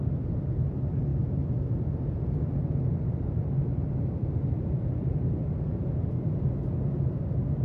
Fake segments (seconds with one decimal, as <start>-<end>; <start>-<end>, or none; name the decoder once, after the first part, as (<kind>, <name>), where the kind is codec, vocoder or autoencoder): none